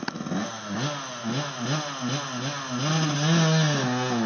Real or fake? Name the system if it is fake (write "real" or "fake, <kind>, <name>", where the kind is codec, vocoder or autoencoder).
real